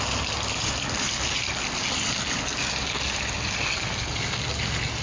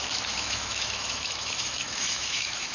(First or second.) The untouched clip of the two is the first